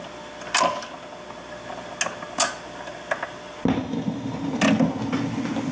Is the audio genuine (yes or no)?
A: yes